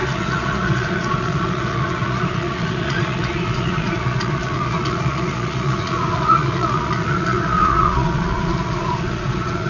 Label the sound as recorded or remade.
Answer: remade